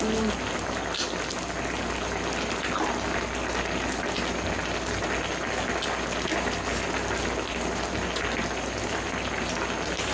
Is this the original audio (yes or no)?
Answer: yes